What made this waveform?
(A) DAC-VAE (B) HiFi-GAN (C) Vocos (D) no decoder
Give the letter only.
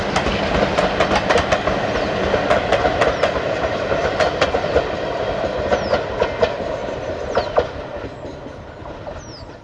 D